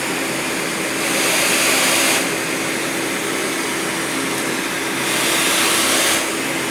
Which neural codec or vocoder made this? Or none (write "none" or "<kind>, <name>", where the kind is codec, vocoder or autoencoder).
none